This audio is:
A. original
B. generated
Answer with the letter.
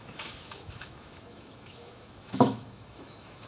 B